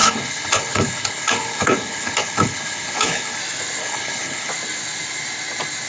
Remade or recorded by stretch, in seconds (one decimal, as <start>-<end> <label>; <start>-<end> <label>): 0.0-3.4 remade; 3.4-3.8 recorded; 3.8-4.5 remade; 4.5-5.9 recorded